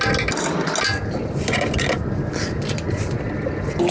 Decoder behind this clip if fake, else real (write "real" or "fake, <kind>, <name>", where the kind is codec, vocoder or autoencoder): real